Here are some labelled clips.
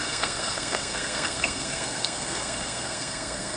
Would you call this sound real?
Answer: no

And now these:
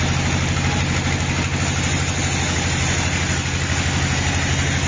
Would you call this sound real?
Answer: yes